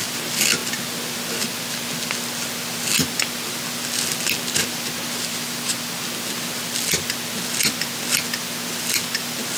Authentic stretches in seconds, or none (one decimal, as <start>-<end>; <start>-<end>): 0.0-9.6